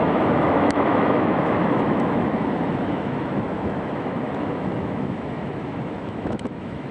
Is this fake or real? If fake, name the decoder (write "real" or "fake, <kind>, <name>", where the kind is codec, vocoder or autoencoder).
fake, autoencoder, DAC-VAE